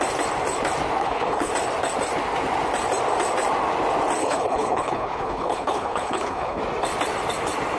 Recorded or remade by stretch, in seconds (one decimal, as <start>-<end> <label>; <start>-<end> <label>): 0.0-1.0 recorded; 1.0-1.5 remade; 1.5-4.2 recorded; 4.2-6.6 remade; 6.6-7.8 recorded